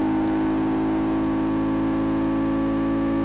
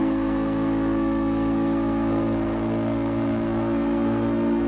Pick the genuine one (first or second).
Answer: first